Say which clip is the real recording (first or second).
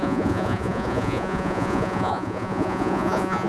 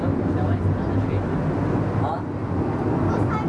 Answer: second